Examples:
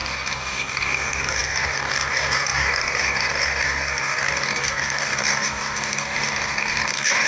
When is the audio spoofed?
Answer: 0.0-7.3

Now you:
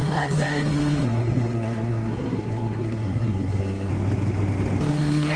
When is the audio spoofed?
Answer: 0.0-3.9; 4.9-5.4